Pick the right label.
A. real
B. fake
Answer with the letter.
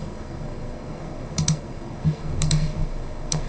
B